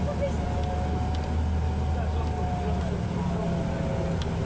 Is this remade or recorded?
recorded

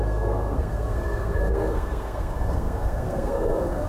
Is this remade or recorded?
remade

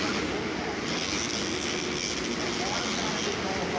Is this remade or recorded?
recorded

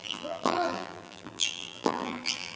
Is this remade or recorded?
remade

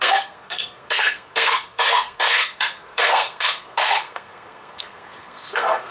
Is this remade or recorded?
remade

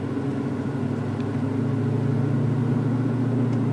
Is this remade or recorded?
recorded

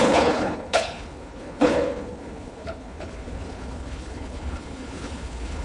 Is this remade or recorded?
remade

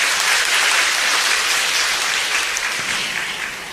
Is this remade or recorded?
recorded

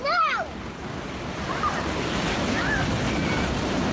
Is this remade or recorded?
recorded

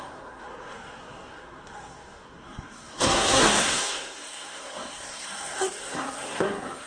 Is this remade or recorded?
remade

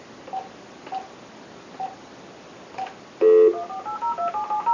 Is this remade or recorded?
recorded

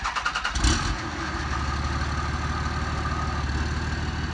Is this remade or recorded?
recorded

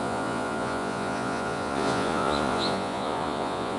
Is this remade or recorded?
remade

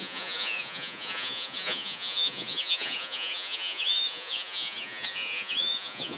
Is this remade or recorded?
remade